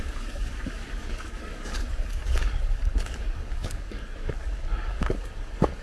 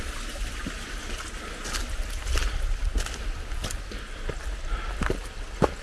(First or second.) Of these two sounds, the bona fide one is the second